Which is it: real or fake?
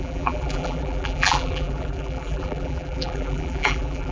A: fake